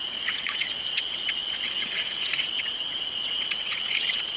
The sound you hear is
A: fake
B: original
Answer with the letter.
A